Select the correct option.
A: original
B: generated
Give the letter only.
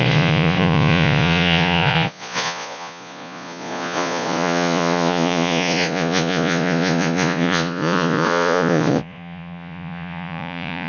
B